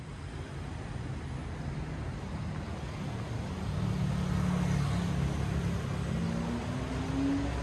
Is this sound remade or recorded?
recorded